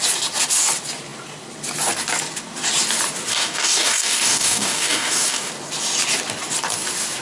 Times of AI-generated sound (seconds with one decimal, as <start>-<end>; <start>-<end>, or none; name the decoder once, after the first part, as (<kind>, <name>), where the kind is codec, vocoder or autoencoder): 3.3-5.5 (codec, DAC)